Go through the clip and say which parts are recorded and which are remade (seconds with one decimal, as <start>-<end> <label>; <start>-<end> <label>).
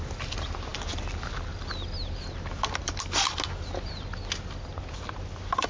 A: 0.0-5.7 recorded